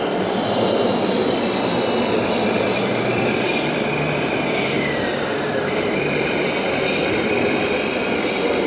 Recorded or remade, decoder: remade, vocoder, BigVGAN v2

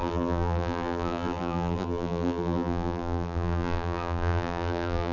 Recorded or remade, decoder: remade, vocoder, BigVGAN v2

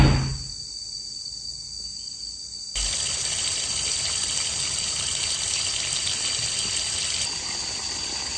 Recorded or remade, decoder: recorded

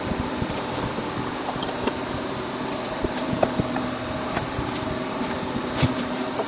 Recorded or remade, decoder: remade, vocoder, BigVGAN v2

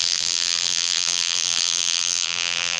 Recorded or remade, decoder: remade, vocoder, BigVGAN v2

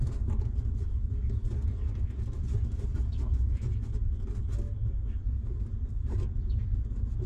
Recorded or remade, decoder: recorded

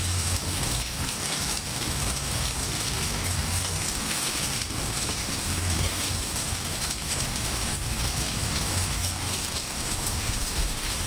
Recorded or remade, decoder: remade, codec, DAC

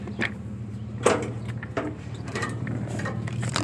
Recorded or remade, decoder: remade, vocoder, BigVGAN v2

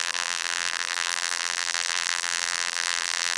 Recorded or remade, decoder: remade, vocoder, BigVGAN v2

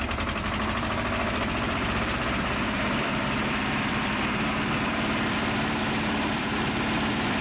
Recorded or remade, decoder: remade, vocoder, BigVGAN v2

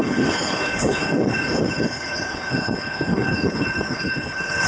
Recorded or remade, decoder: remade, codec, HILCodec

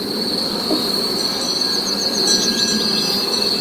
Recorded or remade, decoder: recorded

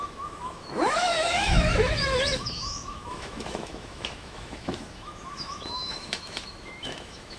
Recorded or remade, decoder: remade, autoencoder, DAC-VAE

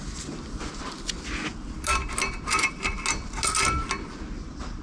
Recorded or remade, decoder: recorded